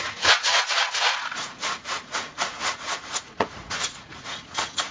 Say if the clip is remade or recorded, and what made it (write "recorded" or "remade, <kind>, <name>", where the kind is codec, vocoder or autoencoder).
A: remade, vocoder, Vocos